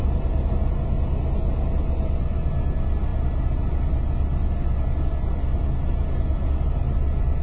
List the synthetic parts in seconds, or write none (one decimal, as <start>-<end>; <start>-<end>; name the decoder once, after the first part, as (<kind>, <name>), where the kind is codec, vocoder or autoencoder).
none